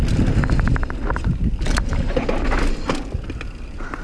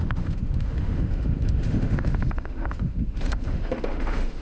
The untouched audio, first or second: first